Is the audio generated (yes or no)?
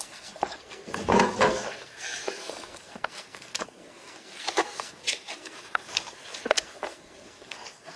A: yes